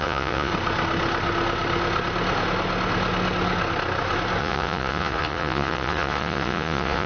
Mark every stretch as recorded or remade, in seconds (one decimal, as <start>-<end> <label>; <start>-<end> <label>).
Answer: 0.0-0.5 remade; 0.5-4.4 recorded; 4.4-7.1 remade